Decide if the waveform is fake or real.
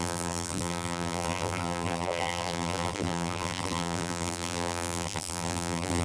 fake